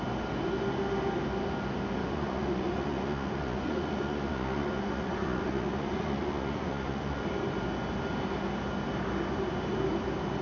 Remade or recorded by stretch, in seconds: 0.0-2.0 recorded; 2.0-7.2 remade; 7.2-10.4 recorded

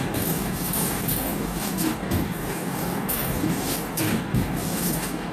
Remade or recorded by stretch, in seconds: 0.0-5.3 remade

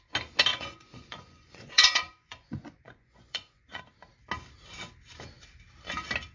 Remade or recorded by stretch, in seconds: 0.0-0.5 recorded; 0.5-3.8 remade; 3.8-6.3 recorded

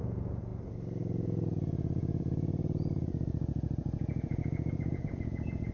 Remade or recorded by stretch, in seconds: 0.0-0.5 remade; 0.5-1.0 recorded; 1.0-5.7 remade

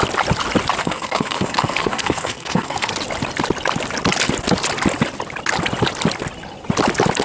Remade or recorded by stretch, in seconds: 0.0-0.8 recorded; 0.8-2.9 remade; 2.9-7.2 recorded